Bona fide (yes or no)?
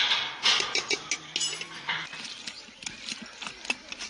yes